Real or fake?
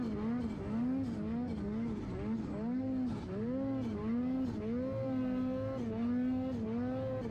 real